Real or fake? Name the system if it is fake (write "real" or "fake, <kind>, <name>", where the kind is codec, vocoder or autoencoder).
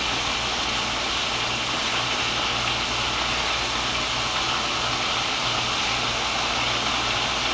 real